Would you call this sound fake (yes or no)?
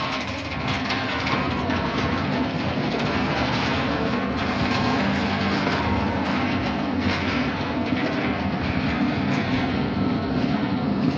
yes